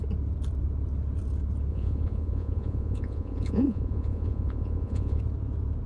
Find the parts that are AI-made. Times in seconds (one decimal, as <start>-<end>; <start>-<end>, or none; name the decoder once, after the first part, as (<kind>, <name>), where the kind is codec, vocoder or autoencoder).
1.7-5.2 (vocoder, Vocos)